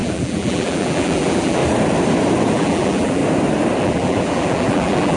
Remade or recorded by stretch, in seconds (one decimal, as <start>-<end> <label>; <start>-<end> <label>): 0.0-1.6 remade; 1.6-2.5 recorded; 2.5-3.2 remade; 3.2-3.8 recorded; 3.8-5.2 remade